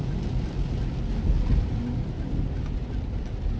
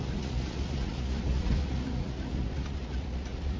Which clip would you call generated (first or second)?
second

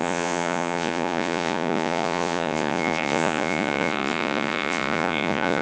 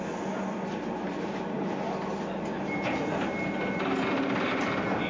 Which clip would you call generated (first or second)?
first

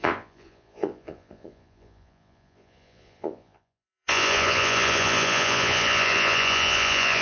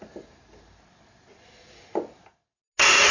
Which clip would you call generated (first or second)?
first